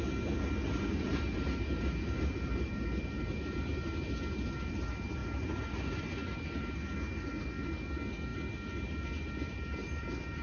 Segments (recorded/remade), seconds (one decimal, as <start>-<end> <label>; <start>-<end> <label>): 0.0-10.4 recorded